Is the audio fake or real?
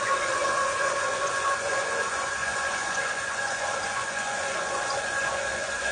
fake